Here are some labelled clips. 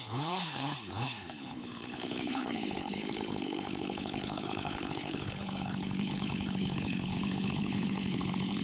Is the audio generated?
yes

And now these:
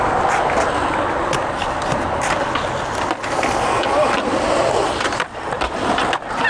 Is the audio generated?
no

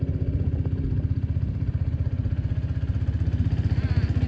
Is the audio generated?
no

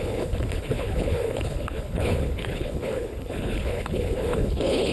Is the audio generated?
yes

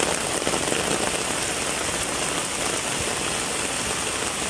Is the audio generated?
no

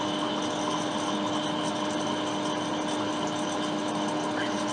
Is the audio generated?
no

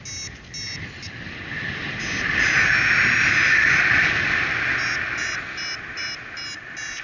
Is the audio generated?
no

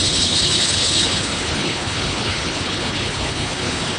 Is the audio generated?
yes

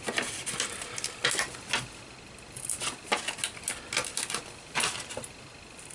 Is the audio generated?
no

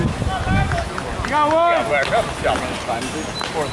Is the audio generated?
no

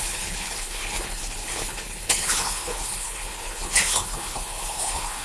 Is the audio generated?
yes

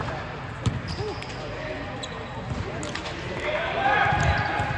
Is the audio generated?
no